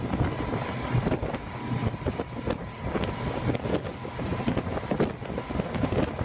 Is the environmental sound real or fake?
real